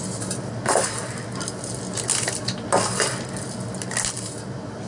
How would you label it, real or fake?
real